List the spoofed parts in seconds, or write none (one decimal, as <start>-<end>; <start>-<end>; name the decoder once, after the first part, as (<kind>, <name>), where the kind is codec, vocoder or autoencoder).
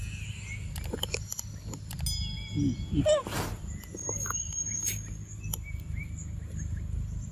none